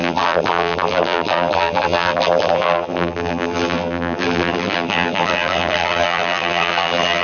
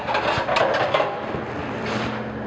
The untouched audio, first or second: second